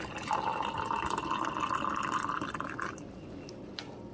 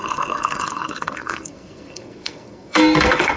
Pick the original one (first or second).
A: first